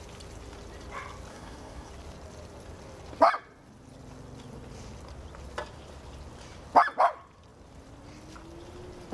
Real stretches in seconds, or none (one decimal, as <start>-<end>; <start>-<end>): 0.0-1.3; 1.9-9.1